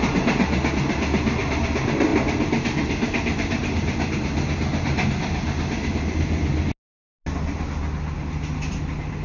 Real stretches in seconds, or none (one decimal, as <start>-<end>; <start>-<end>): 0.0-9.2